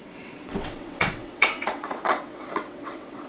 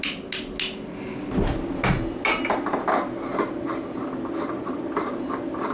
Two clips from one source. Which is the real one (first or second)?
second